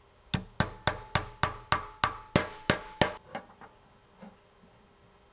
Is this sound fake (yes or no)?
no